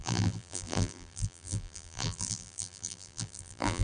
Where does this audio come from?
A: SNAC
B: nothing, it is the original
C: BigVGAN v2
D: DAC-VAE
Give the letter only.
C